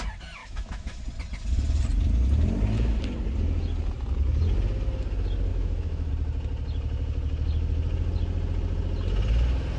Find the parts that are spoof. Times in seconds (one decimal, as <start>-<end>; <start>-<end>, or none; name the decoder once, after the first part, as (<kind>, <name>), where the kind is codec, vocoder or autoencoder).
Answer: 0.4-1.0 (autoencoder, DAC-VAE); 5.5-6.1